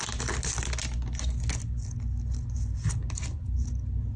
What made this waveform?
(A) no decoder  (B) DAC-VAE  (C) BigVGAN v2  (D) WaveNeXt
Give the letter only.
A